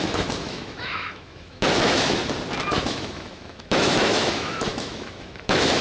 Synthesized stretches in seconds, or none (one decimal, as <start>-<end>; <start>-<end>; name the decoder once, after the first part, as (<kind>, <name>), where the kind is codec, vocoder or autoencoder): 0.0-2.2 (autoencoder, DAC-VAE); 2.8-5.8

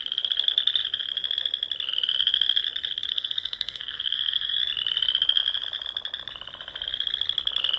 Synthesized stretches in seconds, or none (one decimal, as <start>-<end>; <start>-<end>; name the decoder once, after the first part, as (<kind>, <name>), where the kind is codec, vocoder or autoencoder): 3.1-4.6 (codec, SNAC)

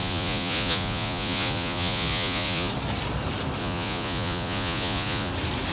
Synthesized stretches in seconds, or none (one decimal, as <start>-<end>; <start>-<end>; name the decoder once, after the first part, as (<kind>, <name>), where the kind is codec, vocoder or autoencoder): 0.0-2.7 (vocoder, Vocos); 3.6-5.3